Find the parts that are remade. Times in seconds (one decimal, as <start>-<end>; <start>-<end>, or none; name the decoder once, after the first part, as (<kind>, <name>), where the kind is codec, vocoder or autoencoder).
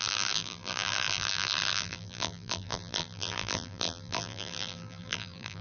0.0-5.6 (vocoder, BigVGAN v2)